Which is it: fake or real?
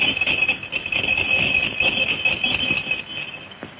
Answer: real